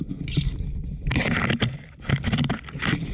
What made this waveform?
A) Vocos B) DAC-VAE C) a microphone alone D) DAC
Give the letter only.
C